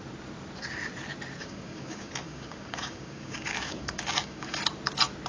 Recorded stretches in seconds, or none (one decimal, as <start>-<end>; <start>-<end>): 0.0-1.4; 4.6-5.3